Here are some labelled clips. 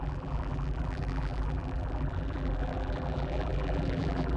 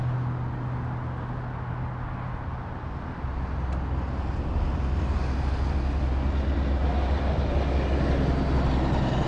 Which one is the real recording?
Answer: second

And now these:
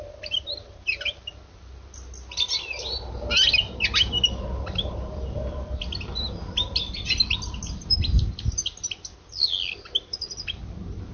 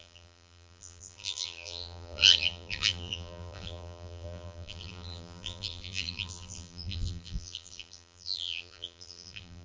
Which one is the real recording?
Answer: first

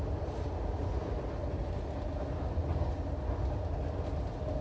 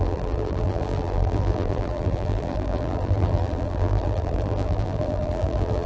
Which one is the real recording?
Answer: first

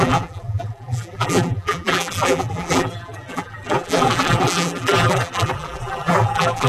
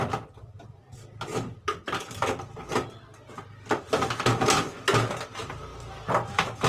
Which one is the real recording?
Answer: second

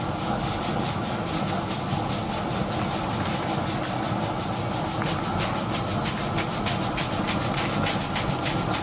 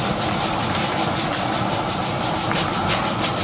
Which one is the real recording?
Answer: first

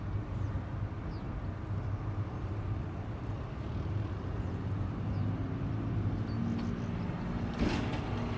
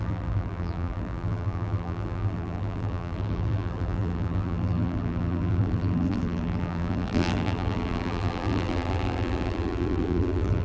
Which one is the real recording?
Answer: first